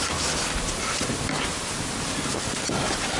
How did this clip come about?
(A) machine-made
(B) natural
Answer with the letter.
B